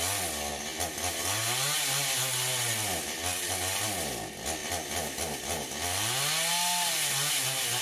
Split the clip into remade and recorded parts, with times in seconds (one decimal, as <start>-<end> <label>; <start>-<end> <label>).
0.0-7.8 recorded